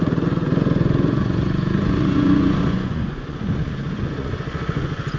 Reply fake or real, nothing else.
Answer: fake